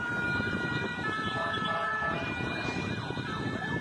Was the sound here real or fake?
fake